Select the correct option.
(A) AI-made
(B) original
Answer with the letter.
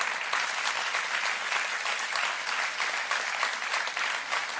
B